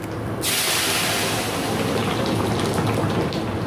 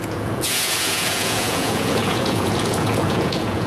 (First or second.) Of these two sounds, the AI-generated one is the second